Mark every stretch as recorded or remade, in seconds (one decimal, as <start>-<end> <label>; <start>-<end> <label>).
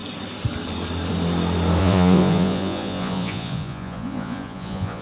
0.0-1.8 recorded; 1.8-5.0 remade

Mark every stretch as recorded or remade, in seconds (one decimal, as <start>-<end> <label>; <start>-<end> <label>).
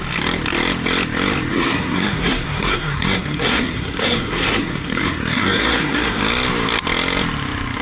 0.0-1.5 recorded; 1.5-6.2 remade; 6.2-7.8 recorded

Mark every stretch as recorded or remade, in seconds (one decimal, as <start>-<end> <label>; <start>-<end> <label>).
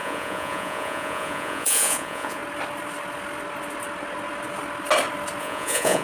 0.0-2.4 remade; 2.4-5.4 recorded; 5.4-6.0 remade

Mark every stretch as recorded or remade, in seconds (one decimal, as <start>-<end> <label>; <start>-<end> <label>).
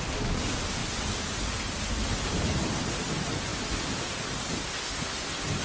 0.0-5.6 recorded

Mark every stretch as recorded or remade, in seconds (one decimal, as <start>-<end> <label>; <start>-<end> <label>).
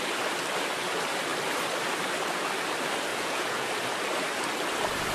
0.0-3.1 recorded; 3.1-3.7 remade; 3.7-5.1 recorded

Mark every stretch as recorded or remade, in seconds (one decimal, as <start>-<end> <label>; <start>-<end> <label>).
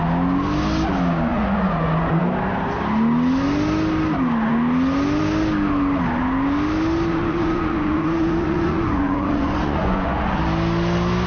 0.0-1.3 recorded; 1.3-2.2 remade; 2.2-7.1 recorded; 7.1-10.4 remade; 10.4-11.3 recorded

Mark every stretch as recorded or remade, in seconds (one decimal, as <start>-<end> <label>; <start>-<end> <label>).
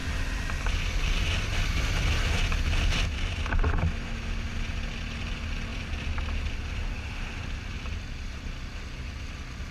0.0-9.7 recorded